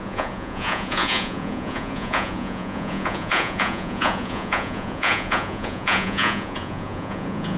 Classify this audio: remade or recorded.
remade